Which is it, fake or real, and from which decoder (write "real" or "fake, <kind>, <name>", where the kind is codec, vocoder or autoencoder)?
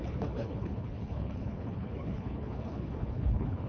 fake, codec, HILCodec